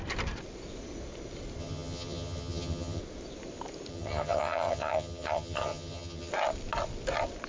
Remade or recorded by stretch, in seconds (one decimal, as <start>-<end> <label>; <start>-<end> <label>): 0.0-1.6 recorded; 1.6-3.0 remade; 3.0-3.9 recorded; 3.9-6.3 remade; 6.3-7.5 recorded